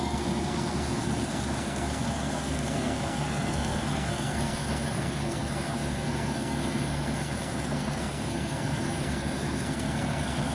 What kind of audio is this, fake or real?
fake